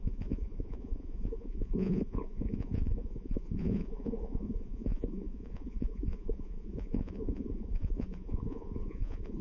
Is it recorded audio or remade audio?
remade